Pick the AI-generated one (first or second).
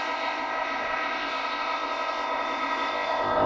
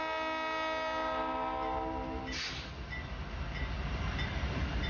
first